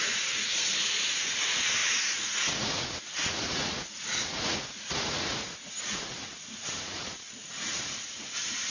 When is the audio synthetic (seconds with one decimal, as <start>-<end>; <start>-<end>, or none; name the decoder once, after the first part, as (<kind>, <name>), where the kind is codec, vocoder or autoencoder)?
0.0-8.7 (vocoder, Vocos)

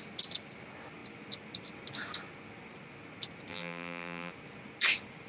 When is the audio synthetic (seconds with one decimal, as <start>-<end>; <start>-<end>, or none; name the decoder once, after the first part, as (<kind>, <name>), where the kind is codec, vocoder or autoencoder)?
3.5-4.3 (vocoder, BigVGAN v2)

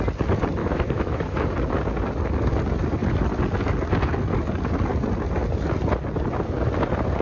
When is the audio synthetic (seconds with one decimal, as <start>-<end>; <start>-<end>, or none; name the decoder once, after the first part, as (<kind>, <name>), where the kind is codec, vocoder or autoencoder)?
0.6-1.5 (autoencoder, DAC-VAE)

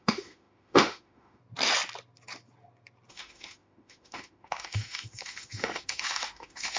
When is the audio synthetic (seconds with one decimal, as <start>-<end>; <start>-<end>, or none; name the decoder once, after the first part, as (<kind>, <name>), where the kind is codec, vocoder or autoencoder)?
0.0-1.4 (autoencoder, DAC-VAE); 3.1-6.8

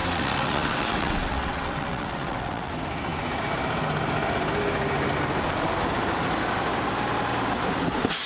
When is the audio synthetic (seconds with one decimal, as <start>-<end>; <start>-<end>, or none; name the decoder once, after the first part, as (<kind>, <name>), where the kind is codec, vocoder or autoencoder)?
0.0-2.7 (vocoder, WaveNeXt)

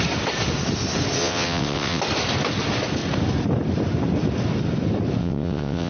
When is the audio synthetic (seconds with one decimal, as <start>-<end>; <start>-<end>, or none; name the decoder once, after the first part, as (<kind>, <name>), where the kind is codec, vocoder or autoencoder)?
1.2-2.0 (vocoder, WaveNeXt); 5.2-5.9

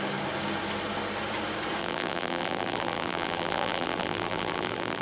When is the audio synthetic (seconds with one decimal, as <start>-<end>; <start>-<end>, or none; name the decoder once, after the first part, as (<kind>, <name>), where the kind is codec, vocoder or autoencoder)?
1.8-5.0 (vocoder, BigVGAN v2)